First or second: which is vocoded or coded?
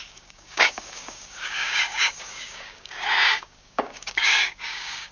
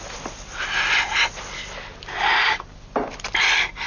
first